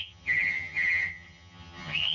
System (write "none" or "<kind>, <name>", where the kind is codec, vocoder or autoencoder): vocoder, HiFi-GAN